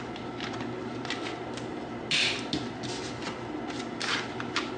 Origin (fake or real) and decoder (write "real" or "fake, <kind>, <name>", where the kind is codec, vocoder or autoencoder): real